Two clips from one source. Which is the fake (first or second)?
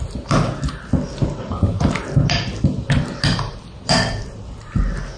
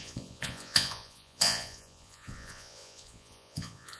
second